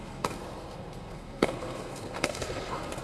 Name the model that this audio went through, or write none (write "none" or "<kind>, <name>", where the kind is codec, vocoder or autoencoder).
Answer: codec, SNAC